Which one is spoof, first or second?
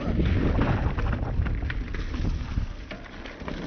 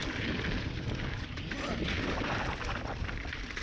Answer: second